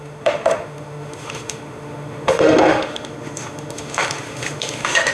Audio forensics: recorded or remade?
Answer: remade